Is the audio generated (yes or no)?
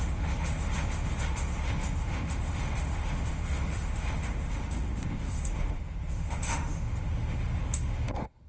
yes